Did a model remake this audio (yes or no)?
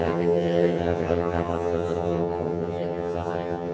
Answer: yes